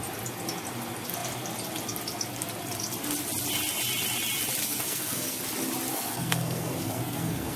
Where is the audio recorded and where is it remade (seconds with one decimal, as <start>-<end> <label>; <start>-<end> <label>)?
0.0-4.6 recorded; 4.6-5.4 remade; 5.4-5.9 recorded; 5.9-7.6 remade

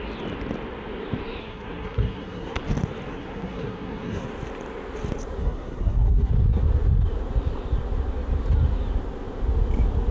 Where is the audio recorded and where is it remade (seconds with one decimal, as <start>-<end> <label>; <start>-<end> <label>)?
0.0-1.4 recorded; 1.4-2.6 remade; 2.6-3.1 recorded; 3.1-4.2 remade; 4.2-5.4 recorded; 5.4-6.3 remade; 6.3-10.1 recorded

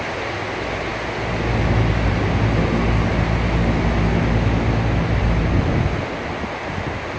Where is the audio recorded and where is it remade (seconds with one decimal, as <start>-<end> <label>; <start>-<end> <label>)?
0.0-7.2 recorded

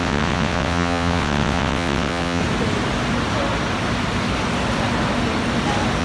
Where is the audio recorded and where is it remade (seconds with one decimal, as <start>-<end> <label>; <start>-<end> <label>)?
0.0-2.4 remade; 2.4-6.0 recorded